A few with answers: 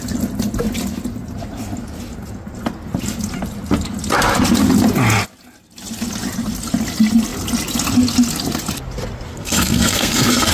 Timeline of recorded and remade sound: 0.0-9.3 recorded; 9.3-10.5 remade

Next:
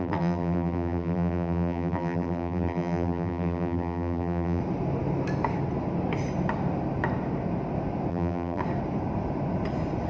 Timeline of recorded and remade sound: 0.0-4.6 remade; 4.6-8.1 recorded; 8.1-8.6 remade; 8.6-10.1 recorded